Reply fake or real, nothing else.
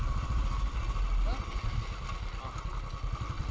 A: real